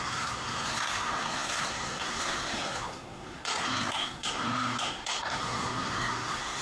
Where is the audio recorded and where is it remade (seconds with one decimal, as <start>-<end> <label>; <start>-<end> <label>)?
0.0-6.6 remade